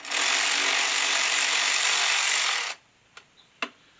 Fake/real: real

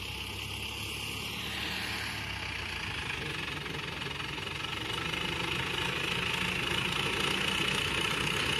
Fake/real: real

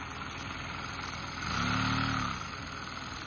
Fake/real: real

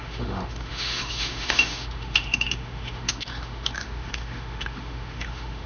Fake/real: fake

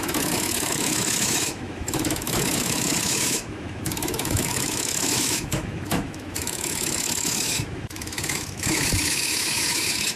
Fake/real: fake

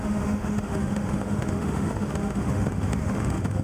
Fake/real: fake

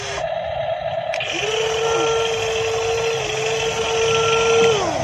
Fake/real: real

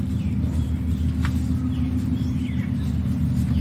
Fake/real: real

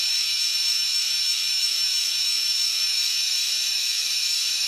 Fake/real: fake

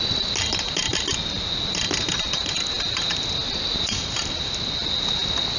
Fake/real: real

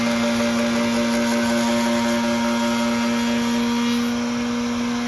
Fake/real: real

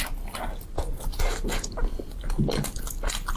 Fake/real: real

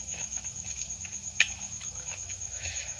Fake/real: fake